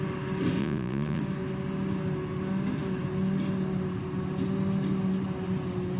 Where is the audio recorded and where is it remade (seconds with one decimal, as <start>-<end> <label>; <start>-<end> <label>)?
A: 0.0-0.6 recorded; 0.6-1.2 remade; 1.2-6.0 recorded